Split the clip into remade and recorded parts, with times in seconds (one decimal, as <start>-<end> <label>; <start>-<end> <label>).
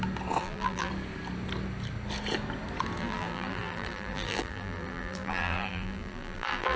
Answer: 0.0-0.4 recorded; 0.4-0.9 remade; 0.9-3.0 recorded; 3.0-6.8 remade